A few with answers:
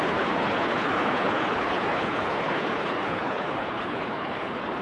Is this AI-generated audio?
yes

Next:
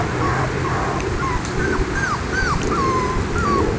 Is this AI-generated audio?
yes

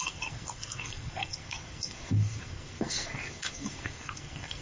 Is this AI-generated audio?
yes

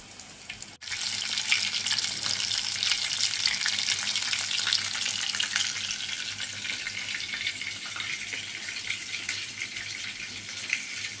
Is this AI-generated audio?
no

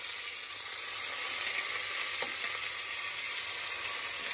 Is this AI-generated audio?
no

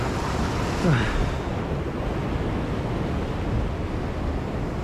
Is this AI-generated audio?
no